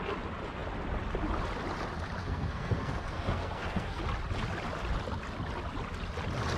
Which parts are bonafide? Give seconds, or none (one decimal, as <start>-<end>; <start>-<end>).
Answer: 0.0-2.2; 4.0-6.6